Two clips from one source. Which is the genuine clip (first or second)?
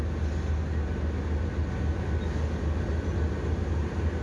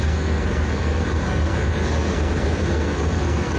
first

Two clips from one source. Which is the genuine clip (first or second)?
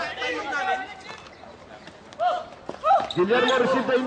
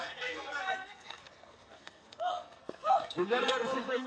first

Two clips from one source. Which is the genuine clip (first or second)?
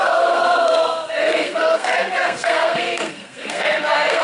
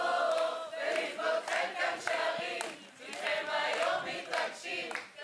second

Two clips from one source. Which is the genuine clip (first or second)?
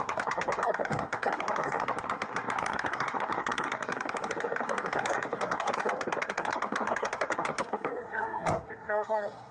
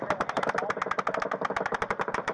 second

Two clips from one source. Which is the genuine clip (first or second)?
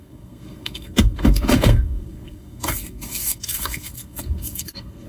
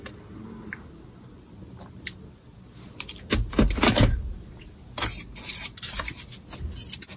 second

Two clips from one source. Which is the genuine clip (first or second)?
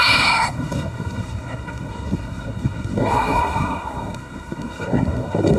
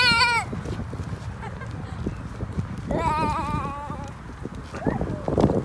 second